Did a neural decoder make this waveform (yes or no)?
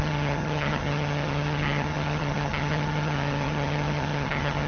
yes